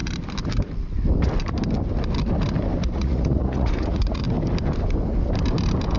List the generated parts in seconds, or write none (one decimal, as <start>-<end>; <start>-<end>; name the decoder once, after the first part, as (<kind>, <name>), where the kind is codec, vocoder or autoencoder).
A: 2.8-4.2 (vocoder, Vocos)